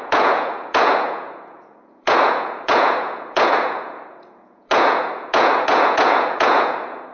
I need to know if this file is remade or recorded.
remade